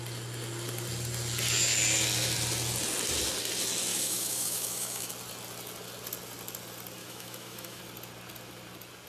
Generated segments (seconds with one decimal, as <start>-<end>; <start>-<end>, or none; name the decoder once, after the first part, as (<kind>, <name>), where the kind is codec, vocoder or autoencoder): 3.9-5.1 (autoencoder, DAC-VAE); 7.0-7.8